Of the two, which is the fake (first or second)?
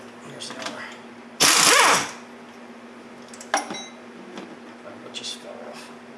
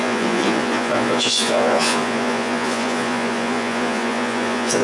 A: second